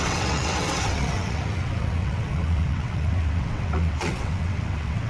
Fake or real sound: fake